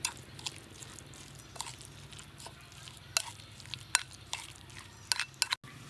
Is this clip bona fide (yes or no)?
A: yes